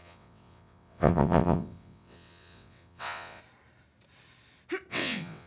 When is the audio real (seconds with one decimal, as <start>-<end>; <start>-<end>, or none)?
3.4-4.9